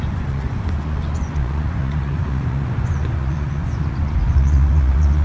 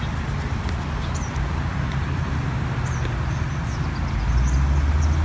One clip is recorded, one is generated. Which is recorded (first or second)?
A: second